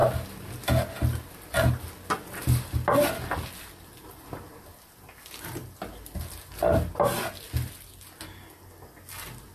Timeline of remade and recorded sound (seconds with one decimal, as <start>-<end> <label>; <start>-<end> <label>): 0.0-9.5 recorded